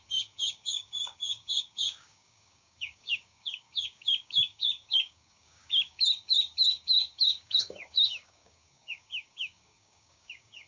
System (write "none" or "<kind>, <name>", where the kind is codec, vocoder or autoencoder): codec, DAC